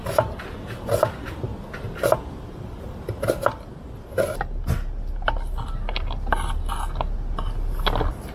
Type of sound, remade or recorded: recorded